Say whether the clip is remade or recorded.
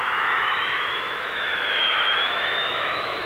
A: remade